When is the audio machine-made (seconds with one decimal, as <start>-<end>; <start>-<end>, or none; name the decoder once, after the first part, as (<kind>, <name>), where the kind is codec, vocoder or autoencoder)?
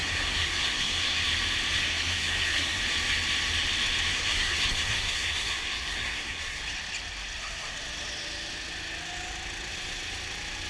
0.0-1.2 (codec, SNAC); 1.8-2.8; 4.1-6.6